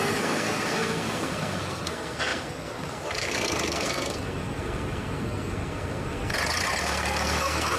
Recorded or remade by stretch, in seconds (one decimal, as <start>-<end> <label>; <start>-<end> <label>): 0.0-6.3 remade; 6.3-6.8 recorded; 6.8-7.8 remade

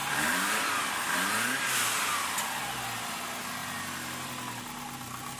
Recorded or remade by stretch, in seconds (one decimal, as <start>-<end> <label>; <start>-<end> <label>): 0.0-0.9 remade; 0.9-3.6 recorded; 3.6-4.6 remade; 4.6-5.4 recorded

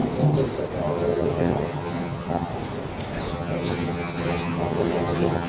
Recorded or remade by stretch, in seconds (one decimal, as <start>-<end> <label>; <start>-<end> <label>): 0.0-0.8 recorded; 0.8-2.5 remade; 2.5-3.3 recorded; 3.3-5.5 remade

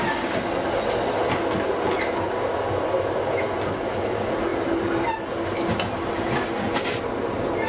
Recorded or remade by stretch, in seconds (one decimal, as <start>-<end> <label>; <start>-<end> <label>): 0.0-7.7 recorded